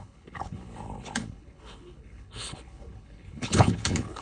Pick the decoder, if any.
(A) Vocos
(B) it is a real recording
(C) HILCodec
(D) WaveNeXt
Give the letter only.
C